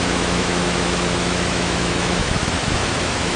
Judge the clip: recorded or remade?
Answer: remade